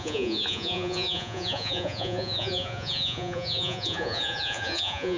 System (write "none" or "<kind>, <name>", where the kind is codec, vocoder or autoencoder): vocoder, Vocos